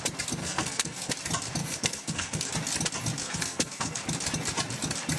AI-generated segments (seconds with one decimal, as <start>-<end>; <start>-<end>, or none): 0.4-1.1; 1.6-2.5; 3.2-4.0